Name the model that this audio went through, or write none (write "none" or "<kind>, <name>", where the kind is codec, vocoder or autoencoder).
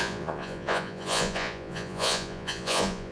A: vocoder, Vocos